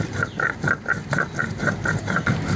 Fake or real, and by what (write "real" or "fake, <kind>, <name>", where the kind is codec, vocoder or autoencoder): real